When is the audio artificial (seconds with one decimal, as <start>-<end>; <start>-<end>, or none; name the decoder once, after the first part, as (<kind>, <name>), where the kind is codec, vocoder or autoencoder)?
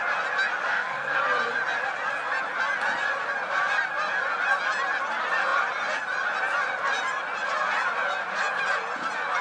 0.7-1.2 (codec, SNAC)